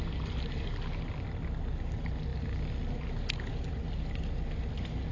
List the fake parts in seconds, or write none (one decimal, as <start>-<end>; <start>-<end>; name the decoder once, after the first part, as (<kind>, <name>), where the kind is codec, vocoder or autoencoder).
none